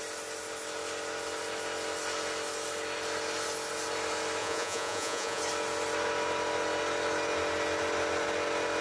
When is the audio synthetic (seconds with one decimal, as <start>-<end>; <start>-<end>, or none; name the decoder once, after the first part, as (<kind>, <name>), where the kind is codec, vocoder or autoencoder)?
4.4-5.4 (vocoder, Vocos)